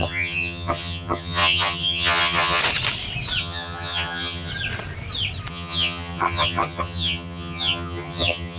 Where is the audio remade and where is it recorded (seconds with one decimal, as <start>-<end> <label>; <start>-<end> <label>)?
0.0-2.6 remade; 2.6-3.4 recorded; 3.4-4.5 remade; 4.5-5.5 recorded; 5.5-8.6 remade